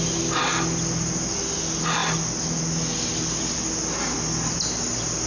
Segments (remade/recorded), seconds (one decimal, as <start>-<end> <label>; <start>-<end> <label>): 0.0-5.3 recorded